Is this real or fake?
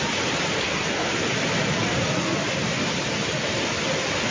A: real